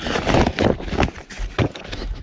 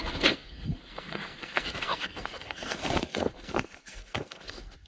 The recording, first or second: first